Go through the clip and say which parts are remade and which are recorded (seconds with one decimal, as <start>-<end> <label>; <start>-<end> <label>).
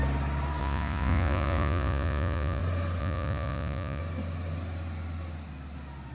0.0-0.6 recorded; 0.6-2.6 remade; 2.6-3.0 recorded; 3.0-4.0 remade; 4.0-6.1 recorded